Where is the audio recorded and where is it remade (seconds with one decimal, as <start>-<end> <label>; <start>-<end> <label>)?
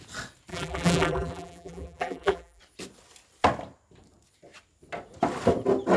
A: 0.0-0.5 recorded; 0.5-2.6 remade; 2.6-6.0 recorded